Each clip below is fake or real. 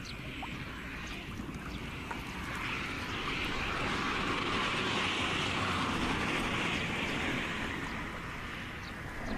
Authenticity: real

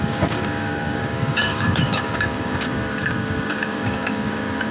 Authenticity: fake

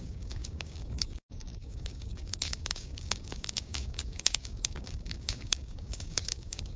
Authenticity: fake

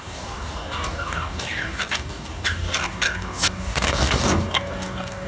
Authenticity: fake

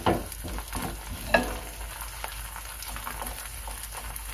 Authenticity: real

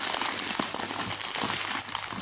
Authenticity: real